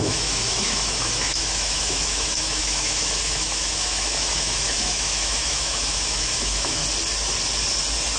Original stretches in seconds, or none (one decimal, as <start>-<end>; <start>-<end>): 6.8-8.2